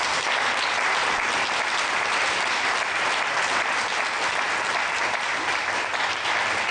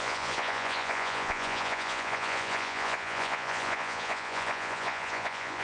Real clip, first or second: first